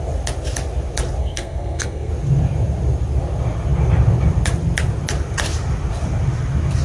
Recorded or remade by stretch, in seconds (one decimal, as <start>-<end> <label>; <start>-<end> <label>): 0.0-1.2 recorded; 1.2-2.1 remade; 2.1-6.8 recorded